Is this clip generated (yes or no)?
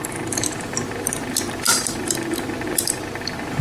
no